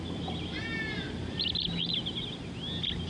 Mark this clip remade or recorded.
recorded